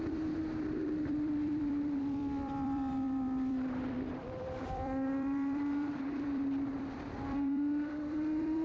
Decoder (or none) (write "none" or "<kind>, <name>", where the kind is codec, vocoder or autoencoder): vocoder, BigVGAN v2